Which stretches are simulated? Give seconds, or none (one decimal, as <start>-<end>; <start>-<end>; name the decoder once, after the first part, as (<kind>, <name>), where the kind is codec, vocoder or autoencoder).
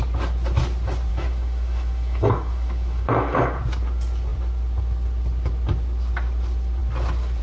1.1-3.6 (autoencoder, DAC-VAE)